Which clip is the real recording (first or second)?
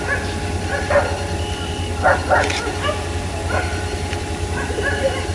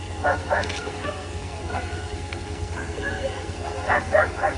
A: first